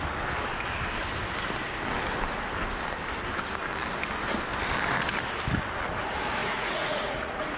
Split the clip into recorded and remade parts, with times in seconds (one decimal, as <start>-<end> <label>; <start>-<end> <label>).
0.0-6.4 recorded; 6.4-7.6 remade